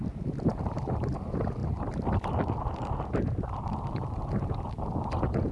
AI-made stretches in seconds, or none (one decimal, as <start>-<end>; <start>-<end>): none